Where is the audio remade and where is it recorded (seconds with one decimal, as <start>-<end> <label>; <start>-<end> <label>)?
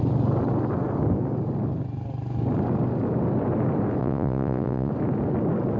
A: 0.0-4.0 recorded; 4.0-4.9 remade; 4.9-5.8 recorded